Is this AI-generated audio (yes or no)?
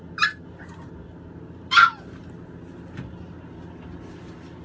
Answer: no